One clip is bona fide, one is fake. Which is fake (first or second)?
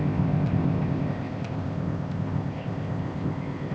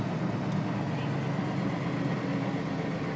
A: first